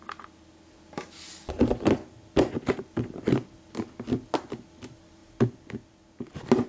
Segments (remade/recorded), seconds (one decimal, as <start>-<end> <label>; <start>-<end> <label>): 0.0-6.7 recorded